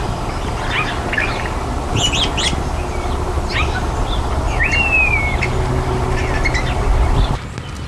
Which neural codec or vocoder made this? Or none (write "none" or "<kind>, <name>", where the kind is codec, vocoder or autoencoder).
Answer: none